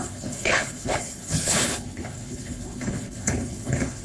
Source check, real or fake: fake